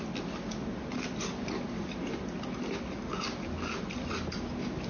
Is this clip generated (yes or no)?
no